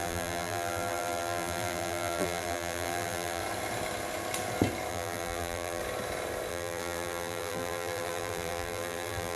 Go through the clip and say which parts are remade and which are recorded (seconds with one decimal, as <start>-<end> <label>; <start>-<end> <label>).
0.0-3.4 remade; 3.4-4.9 recorded; 4.9-5.8 remade; 5.8-6.5 recorded; 6.5-9.4 remade